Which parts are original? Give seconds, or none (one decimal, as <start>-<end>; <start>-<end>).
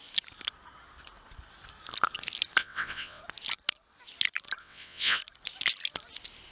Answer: 0.0-2.6; 3.2-4.6; 5.2-6.5